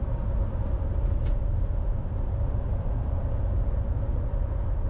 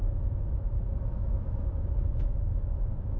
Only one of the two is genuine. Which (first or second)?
first